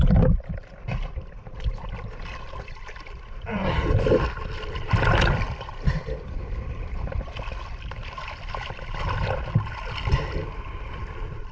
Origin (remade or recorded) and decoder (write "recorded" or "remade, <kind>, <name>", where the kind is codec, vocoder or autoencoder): recorded